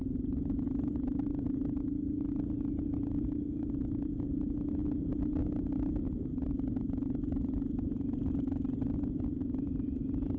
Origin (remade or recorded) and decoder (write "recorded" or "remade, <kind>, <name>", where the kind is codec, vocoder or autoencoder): recorded